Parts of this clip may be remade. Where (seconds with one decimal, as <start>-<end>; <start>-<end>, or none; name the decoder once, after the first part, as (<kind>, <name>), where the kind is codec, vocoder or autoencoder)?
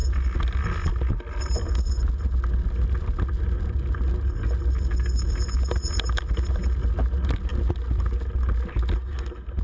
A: none